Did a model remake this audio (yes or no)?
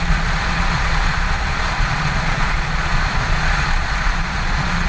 yes